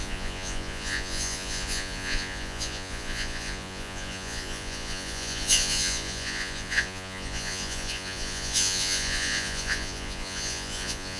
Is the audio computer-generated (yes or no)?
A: yes